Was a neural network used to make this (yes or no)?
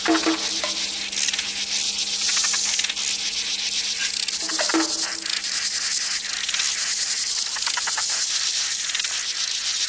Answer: no